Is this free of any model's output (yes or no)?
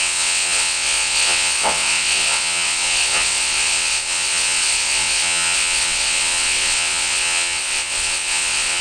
no